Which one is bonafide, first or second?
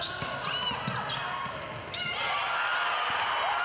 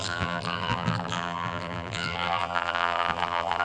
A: first